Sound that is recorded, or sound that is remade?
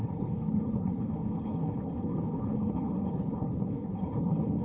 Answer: remade